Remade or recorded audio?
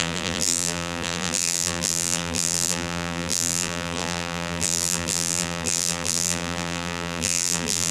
remade